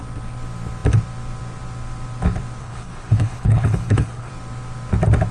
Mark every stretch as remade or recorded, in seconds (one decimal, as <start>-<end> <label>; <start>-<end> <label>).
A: 0.0-2.6 recorded; 2.6-4.3 remade; 4.3-5.3 recorded